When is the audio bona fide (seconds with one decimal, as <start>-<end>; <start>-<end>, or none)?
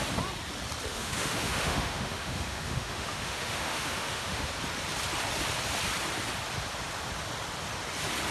0.0-0.9; 4.5-8.3